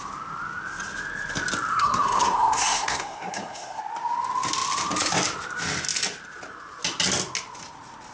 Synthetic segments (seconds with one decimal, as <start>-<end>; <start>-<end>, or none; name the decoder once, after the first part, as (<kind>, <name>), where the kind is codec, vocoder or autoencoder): 1.7-3.8 (codec, SNAC)